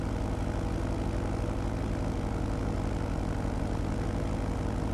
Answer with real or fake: real